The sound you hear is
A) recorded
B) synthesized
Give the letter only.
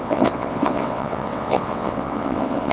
B